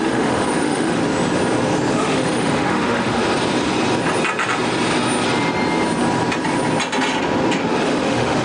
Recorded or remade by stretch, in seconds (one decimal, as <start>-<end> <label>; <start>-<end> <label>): 0.0-1.0 remade; 1.0-1.9 recorded; 1.9-3.2 remade; 3.2-7.8 recorded; 7.8-8.4 remade